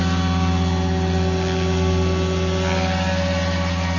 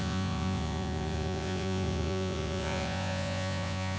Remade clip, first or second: second